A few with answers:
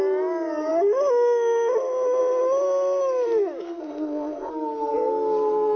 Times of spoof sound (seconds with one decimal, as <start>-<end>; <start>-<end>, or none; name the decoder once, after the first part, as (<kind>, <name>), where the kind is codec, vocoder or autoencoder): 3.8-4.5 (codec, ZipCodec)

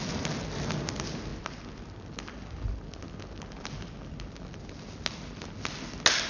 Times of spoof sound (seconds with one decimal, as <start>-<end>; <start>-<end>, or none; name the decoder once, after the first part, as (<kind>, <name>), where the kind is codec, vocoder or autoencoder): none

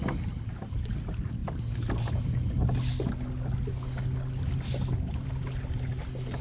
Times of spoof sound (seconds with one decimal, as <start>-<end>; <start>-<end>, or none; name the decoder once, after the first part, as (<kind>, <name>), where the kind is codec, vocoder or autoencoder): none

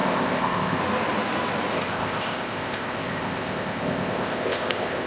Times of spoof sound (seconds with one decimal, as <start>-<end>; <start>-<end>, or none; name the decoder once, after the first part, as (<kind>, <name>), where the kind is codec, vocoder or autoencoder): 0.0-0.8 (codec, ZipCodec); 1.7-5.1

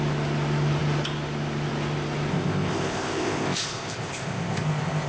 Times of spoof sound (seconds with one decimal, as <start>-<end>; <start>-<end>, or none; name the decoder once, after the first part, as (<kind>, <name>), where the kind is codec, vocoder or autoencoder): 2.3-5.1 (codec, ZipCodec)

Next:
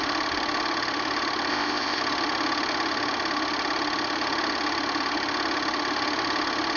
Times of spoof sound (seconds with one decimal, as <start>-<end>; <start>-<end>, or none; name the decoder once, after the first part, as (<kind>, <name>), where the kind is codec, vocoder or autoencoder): 1.5-2.0 (codec, ZipCodec)

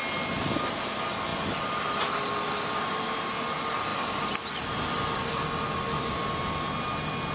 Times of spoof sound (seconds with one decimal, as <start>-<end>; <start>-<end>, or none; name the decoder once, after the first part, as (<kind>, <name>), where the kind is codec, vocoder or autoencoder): none